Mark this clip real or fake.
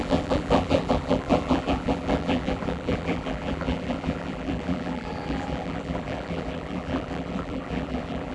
fake